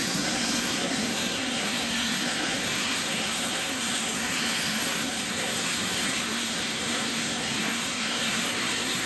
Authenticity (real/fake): fake